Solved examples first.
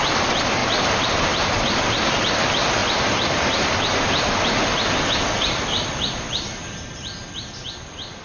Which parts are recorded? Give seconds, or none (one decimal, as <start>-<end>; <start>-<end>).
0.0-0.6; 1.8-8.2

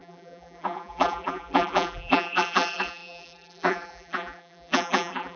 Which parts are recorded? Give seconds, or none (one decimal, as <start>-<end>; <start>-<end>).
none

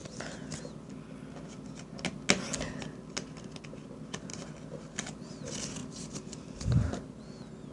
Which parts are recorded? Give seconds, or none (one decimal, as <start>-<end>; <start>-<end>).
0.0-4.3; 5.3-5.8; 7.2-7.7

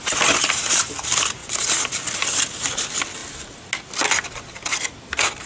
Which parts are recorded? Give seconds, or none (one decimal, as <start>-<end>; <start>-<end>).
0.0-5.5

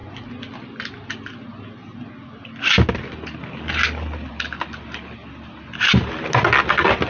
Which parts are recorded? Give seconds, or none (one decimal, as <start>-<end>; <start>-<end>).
0.0-5.2; 6.1-7.1

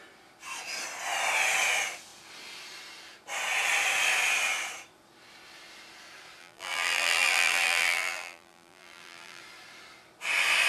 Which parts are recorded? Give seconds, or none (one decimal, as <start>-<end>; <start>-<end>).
0.0-6.4; 9.4-10.7

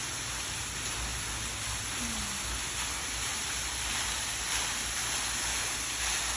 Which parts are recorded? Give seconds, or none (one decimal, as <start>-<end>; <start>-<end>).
0.0-6.4

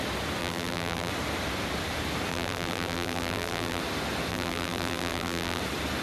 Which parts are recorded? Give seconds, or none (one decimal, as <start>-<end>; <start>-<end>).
0.0-0.4; 1.1-2.3; 3.8-4.3; 5.6-6.0